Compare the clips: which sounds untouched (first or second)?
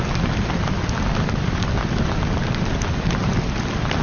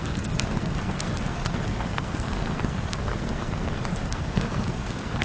first